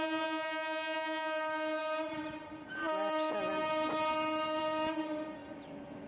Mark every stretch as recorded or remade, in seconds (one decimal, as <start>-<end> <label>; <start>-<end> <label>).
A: 0.0-6.1 recorded